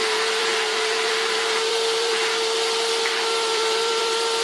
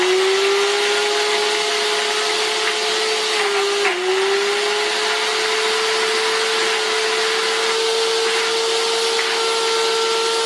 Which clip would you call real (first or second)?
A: second